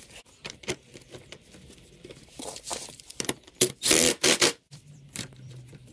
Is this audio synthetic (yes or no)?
yes